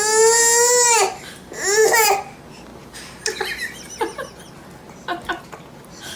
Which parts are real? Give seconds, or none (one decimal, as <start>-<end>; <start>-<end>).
0.0-6.2